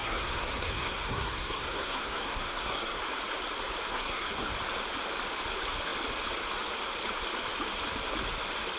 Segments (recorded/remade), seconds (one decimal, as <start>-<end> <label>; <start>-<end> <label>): 0.0-3.0 remade; 3.0-3.9 recorded; 3.9-4.5 remade; 4.5-8.8 recorded